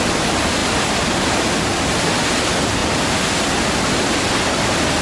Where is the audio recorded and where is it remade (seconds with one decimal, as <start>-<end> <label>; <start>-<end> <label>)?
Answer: 0.0-5.0 recorded